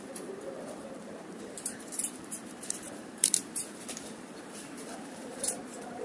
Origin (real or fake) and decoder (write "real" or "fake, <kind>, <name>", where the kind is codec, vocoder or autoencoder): fake, vocoder, BigVGAN v2